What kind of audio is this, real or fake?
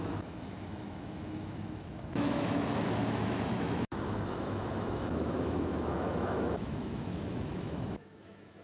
fake